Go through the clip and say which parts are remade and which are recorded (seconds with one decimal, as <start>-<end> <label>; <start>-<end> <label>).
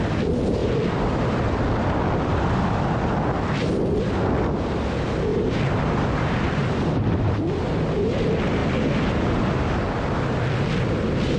0.0-0.6 recorded; 0.6-3.9 remade; 3.9-5.3 recorded; 5.3-7.6 remade; 7.6-11.4 recorded